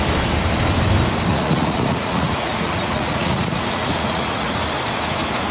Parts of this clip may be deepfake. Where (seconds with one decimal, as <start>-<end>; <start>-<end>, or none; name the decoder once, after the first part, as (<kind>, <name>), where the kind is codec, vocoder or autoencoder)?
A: 1.3-4.6 (vocoder, Vocos)